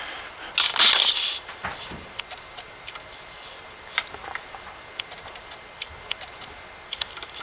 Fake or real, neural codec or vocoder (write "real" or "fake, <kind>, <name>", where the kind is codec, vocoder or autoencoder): real